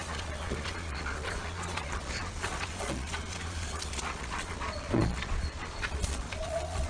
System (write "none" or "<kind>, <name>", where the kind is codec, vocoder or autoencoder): vocoder, Vocos